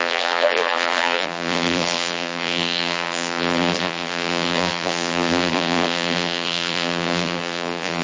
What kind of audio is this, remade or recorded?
remade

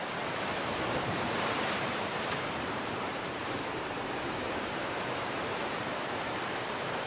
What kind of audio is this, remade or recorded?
remade